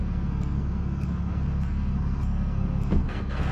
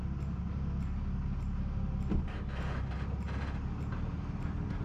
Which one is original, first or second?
second